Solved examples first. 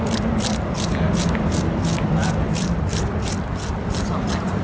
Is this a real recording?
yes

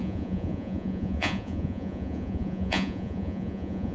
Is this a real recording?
no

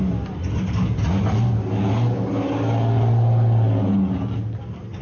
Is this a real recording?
yes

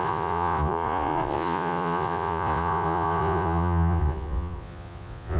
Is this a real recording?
no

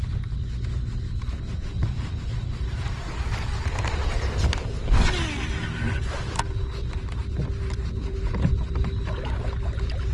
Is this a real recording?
yes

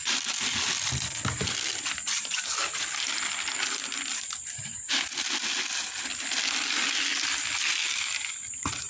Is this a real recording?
yes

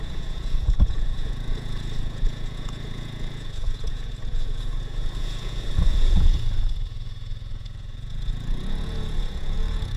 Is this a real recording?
no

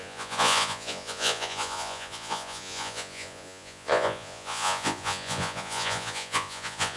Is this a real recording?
no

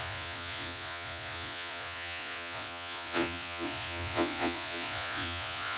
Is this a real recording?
no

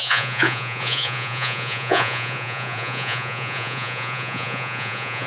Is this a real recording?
no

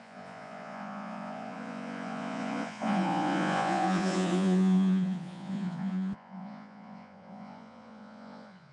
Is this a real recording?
no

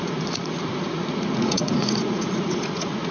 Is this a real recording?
no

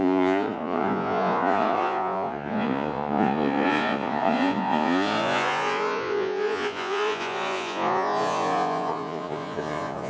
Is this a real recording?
no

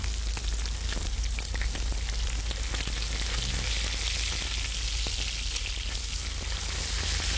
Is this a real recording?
yes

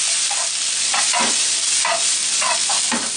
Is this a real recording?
yes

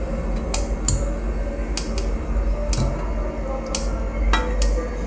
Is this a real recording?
yes